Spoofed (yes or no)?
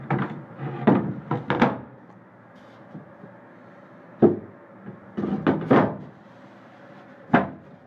no